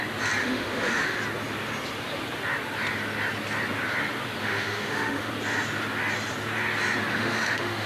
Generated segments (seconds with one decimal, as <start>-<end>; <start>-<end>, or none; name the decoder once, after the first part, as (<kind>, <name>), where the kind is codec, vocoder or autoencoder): 0.4-1.2 (autoencoder, DAC-VAE); 4.4-5.3; 7.1-7.9